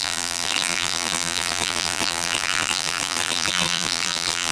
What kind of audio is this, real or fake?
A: fake